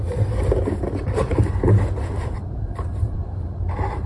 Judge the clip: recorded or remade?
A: remade